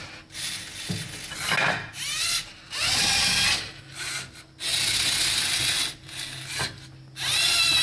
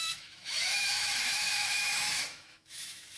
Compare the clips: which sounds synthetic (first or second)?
second